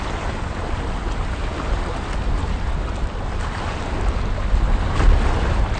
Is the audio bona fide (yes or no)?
yes